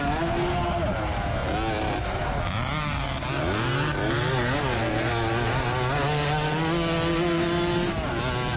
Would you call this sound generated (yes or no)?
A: no